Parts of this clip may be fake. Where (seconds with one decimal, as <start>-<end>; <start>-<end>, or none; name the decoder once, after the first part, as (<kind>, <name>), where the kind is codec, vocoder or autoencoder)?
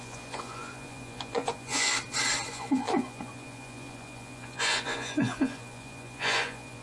0.0-1.9 (vocoder, Vocos); 2.5-6.8